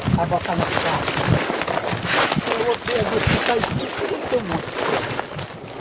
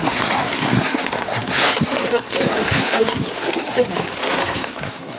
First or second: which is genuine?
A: first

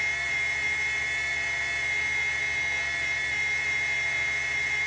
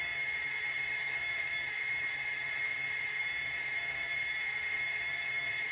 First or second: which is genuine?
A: first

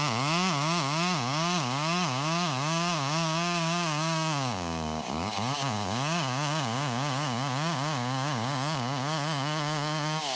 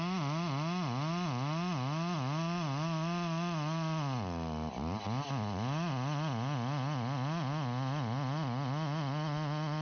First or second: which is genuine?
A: second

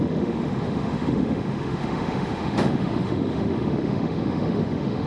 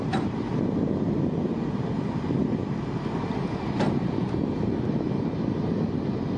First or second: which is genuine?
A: second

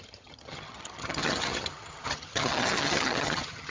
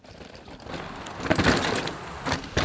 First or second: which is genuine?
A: second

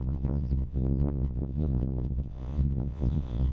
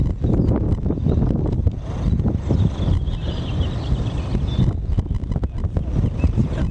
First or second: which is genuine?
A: second